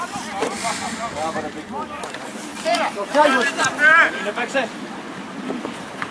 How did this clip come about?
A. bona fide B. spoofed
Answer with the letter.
B